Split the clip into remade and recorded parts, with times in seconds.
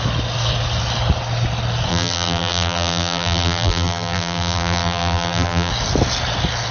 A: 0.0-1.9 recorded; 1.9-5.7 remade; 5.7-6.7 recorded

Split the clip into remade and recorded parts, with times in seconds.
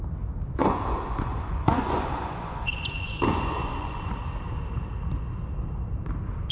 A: 0.0-0.6 recorded; 0.6-4.1 remade; 4.1-6.5 recorded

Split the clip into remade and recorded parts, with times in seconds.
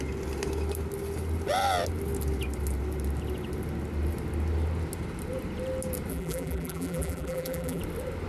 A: 0.0-6.1 recorded; 6.1-7.8 remade; 7.8-8.3 recorded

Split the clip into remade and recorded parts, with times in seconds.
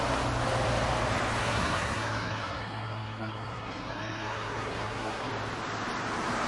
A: 0.0-1.4 recorded; 1.4-5.3 remade; 5.3-6.5 recorded